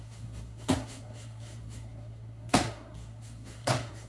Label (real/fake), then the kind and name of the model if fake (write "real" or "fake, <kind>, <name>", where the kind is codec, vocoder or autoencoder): fake, codec, SNAC